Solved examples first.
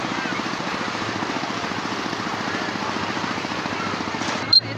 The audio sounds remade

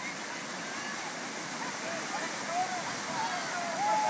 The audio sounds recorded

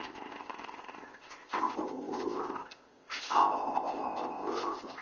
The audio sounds remade